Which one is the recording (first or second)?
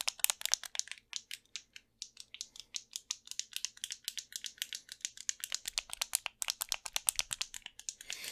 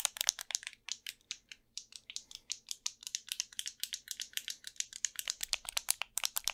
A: first